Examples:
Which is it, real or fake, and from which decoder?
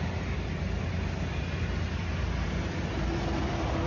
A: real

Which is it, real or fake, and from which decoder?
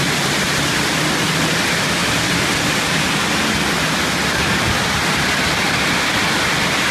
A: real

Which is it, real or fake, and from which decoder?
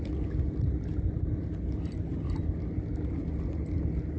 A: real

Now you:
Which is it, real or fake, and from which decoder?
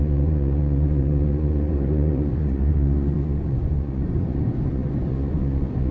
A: fake, vocoder, Vocos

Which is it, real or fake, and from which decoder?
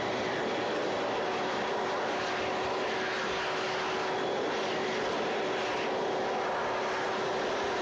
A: real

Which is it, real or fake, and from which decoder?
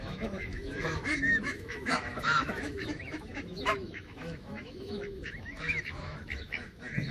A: fake, autoencoder, DAC-VAE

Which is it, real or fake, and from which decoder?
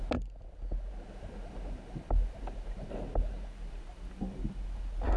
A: real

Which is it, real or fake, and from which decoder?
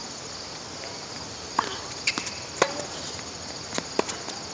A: real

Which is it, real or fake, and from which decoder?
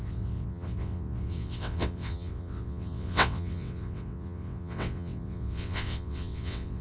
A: fake, vocoder, WaveNeXt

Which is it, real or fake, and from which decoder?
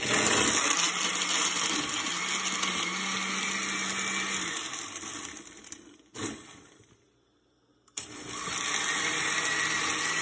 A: real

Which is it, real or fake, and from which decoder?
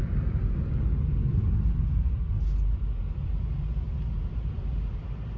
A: real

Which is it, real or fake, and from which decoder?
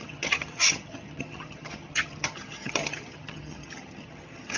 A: fake, vocoder, HiFi-GAN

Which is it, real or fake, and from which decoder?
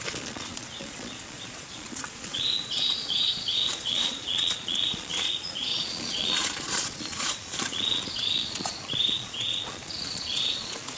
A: fake, vocoder, Vocos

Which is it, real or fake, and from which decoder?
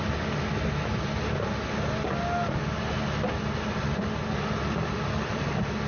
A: real